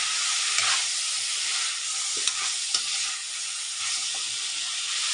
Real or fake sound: real